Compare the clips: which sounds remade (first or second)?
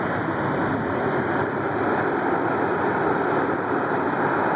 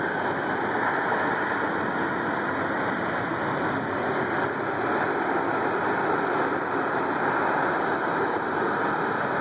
first